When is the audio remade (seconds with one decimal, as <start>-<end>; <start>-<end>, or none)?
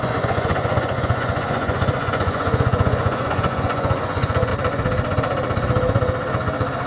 0.0-4.5